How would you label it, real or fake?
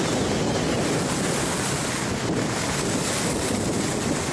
real